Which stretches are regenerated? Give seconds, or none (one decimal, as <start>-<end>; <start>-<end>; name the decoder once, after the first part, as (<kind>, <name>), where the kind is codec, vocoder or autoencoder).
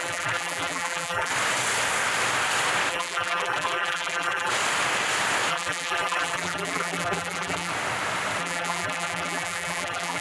0.0-1.3 (vocoder, BigVGAN v2); 2.9-4.5; 5.5-7.7; 8.4-10.2